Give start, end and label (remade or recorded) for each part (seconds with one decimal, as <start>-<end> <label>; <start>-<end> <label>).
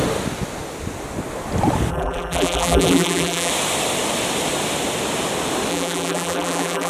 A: 0.0-1.9 recorded; 1.9-3.5 remade; 3.5-5.7 recorded; 5.7-6.9 remade